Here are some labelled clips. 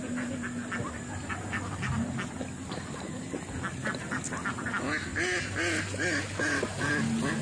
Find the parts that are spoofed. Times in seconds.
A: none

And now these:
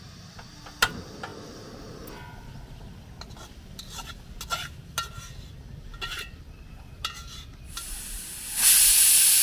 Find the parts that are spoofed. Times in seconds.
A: 4.5-5.1 (vocoder, BigVGAN v2)

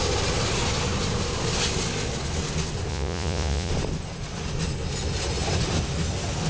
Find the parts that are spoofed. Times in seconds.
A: 2.9-3.7 (vocoder, Vocos)

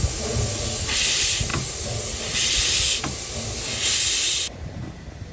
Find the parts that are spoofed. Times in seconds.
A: none

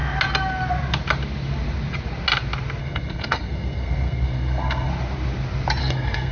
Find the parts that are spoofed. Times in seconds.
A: 2.8-4.9 (codec, SNAC); 5.8-6.3

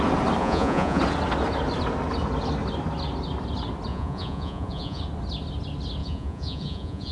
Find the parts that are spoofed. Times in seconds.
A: 0.4-1.0 (vocoder, Vocos); 3.9-5.0; 6.0-7.1